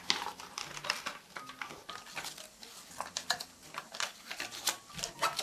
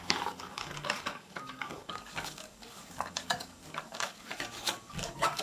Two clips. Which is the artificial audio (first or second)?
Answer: second